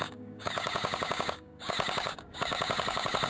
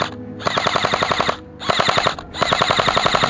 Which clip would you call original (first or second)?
second